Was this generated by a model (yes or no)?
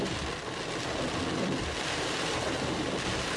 no